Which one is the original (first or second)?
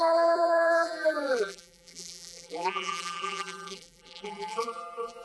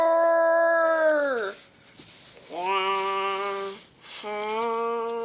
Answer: second